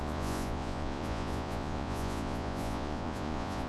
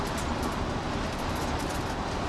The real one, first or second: second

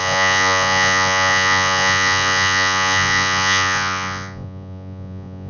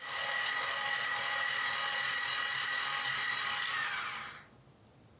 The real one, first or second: second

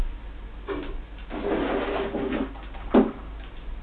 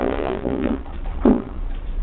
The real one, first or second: first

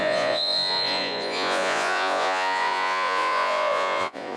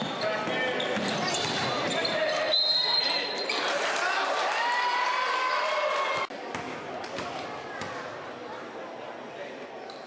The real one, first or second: second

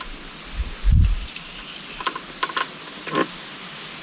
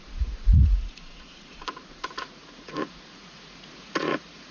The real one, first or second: first